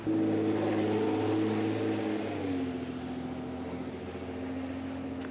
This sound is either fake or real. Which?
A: real